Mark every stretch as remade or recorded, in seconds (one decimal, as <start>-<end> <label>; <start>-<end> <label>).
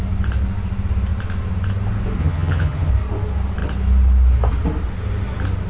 0.0-2.2 recorded; 2.2-2.9 remade; 2.9-5.7 recorded